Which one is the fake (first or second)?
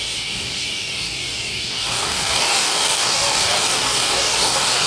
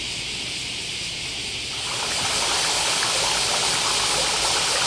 first